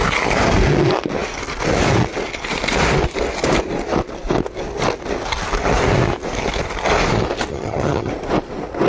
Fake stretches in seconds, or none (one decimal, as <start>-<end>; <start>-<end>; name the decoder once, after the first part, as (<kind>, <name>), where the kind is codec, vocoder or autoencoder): 7.5-8.1 (vocoder, HiFi-GAN)